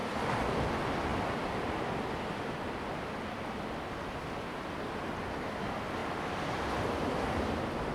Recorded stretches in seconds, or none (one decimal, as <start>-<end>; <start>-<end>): 0.6-6.0; 7.4-7.9